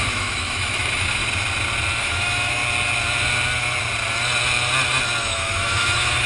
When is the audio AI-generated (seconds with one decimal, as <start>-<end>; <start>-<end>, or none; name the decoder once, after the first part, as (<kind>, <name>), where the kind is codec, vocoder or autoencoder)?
0.0-1.2 (autoencoder, DAC-VAE); 2.0-2.6; 5.2-6.3